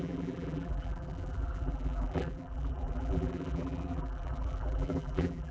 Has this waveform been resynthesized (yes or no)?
yes